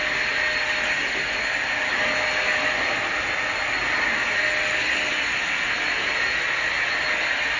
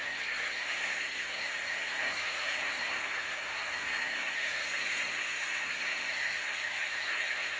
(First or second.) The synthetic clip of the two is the second